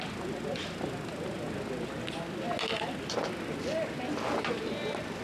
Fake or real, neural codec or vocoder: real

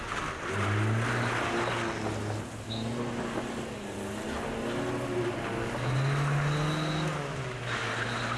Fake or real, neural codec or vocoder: real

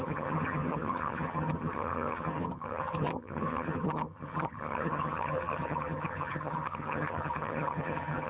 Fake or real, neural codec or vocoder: fake, vocoder, HiFi-GAN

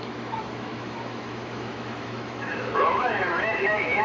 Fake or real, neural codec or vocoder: fake, autoencoder, DAC-VAE